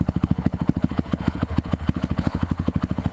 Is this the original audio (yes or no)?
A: no